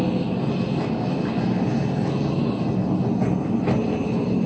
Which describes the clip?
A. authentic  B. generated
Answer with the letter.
A